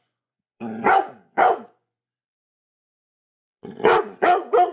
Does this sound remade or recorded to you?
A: remade